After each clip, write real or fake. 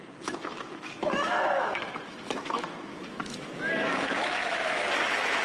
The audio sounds fake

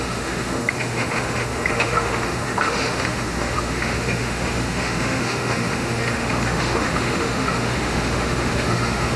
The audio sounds fake